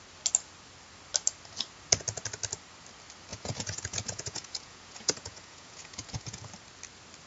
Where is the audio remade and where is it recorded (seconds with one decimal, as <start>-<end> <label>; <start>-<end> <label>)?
0.0-3.3 recorded; 3.3-6.5 remade; 6.5-7.3 recorded